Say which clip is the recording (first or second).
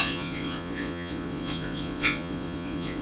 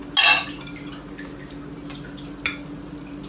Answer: second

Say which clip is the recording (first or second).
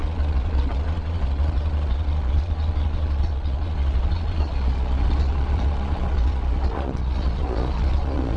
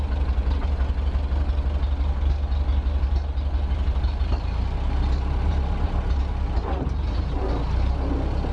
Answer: second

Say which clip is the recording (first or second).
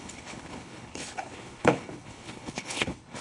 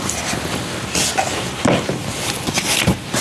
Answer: second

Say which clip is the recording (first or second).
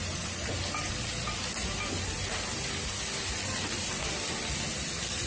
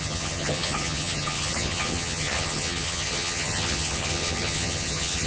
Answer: first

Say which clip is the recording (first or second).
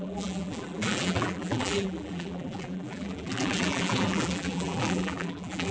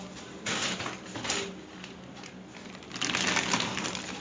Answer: second